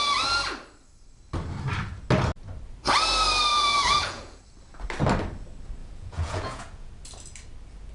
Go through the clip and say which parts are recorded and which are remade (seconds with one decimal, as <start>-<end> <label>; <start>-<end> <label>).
0.0-3.5 recorded; 3.5-4.4 remade; 4.4-5.8 recorded; 5.8-6.9 remade; 6.9-7.9 recorded